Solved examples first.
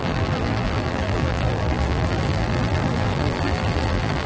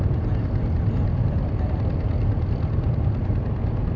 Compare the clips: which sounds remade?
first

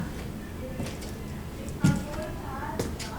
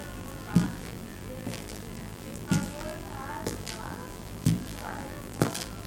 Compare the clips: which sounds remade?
second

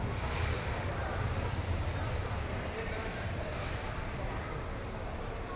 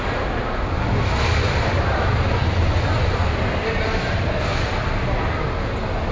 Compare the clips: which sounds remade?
first